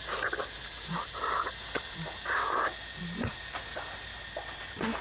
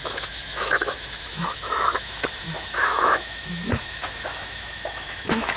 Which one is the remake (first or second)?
second